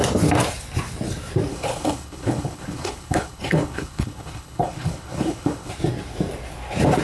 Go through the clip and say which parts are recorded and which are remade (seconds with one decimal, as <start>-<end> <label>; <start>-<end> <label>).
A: 0.0-1.5 recorded; 1.5-5.7 remade; 5.7-7.0 recorded